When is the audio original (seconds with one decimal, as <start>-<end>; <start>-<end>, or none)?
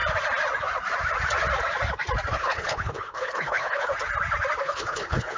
0.0-2.3; 3.9-4.6